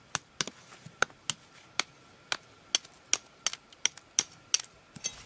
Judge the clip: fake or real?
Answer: real